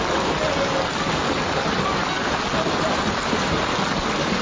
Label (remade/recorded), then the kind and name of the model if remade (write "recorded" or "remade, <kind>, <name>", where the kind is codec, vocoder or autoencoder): recorded